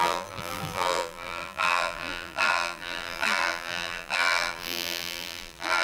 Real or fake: fake